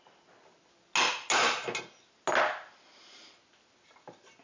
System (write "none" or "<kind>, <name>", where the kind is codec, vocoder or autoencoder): none